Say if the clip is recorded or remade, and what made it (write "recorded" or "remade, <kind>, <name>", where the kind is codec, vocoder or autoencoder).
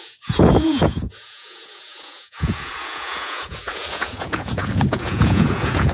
remade, vocoder, Vocos